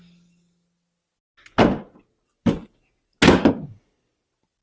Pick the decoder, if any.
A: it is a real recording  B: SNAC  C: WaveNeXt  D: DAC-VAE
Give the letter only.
A